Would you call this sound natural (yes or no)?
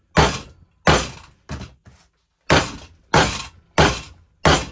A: yes